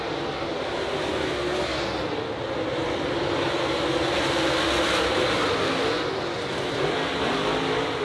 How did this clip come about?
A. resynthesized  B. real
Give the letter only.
B